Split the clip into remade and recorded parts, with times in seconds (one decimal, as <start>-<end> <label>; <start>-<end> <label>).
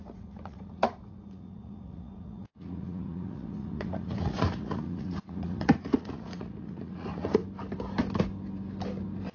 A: 0.0-7.4 remade; 7.4-9.3 recorded